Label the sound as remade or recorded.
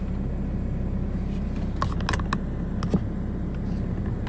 recorded